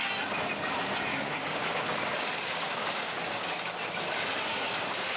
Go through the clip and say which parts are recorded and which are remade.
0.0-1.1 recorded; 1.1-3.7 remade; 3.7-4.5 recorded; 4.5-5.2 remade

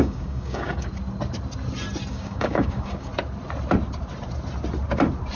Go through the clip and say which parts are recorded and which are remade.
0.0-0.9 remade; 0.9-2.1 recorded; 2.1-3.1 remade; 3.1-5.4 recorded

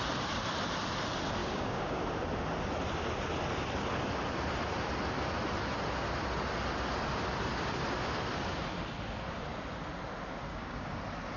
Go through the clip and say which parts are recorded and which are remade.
0.0-1.4 recorded; 1.4-2.0 remade; 2.0-10.5 recorded; 10.5-11.0 remade; 11.0-11.4 recorded

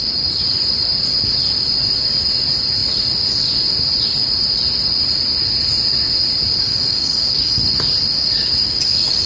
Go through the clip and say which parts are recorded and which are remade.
0.0-6.7 recorded; 6.7-7.8 remade; 7.8-8.6 recorded; 8.6-9.3 remade

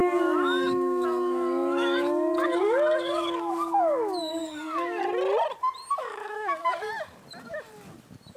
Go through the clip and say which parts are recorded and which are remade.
0.0-5.0 remade; 5.0-6.0 recorded; 6.0-6.9 remade; 6.9-8.4 recorded

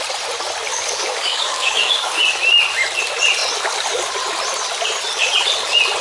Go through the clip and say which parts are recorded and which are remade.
0.0-0.7 recorded; 0.7-2.2 remade; 2.2-6.0 recorded

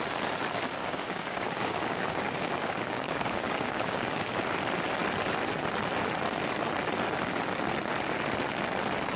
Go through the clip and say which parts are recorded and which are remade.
0.0-0.8 recorded; 0.8-4.4 remade; 4.4-9.2 recorded

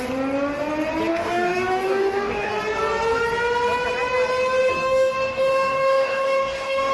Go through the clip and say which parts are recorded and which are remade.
0.0-1.1 recorded; 1.1-2.5 remade; 2.5-4.7 recorded; 4.7-6.9 remade